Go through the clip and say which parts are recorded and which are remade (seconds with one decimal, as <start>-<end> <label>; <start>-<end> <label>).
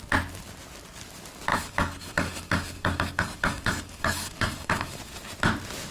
0.0-1.5 recorded; 1.5-5.0 remade; 5.0-5.9 recorded